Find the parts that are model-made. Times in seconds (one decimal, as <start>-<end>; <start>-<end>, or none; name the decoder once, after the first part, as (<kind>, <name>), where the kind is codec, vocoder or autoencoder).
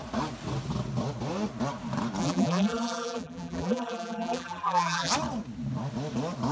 2.2-5.1 (vocoder, BigVGAN v2)